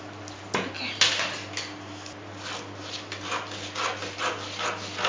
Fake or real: real